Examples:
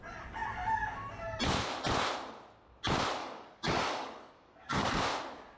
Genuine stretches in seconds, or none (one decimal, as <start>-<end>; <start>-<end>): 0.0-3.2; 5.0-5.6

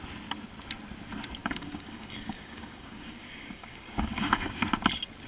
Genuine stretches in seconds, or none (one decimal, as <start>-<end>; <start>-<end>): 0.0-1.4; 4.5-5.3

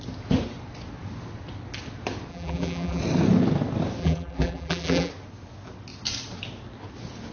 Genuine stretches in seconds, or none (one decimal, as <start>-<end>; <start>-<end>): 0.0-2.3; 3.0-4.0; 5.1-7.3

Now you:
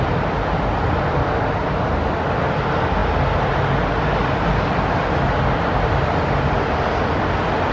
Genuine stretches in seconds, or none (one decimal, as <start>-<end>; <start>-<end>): 0.0-7.7

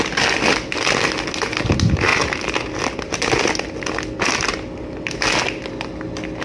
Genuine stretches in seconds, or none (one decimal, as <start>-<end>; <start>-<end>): 0.0-6.4

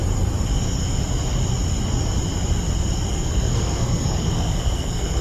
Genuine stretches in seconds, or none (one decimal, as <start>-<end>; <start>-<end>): 0.0-3.1